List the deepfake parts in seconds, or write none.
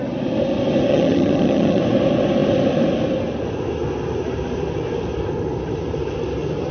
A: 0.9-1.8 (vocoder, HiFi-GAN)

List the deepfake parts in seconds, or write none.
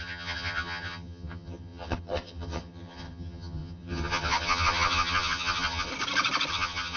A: 0.0-5.9 (vocoder, HiFi-GAN); 6.5-7.0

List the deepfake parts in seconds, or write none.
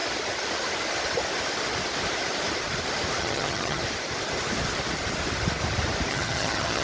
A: 3.2-3.8 (vocoder, HiFi-GAN); 6.1-6.8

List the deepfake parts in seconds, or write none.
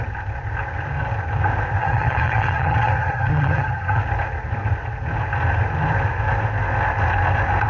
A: 1.8-4.0 (vocoder, HiFi-GAN)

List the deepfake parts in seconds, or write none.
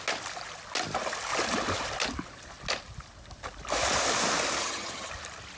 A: 4.6-5.1 (vocoder, HiFi-GAN)